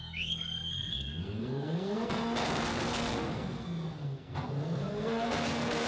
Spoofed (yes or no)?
yes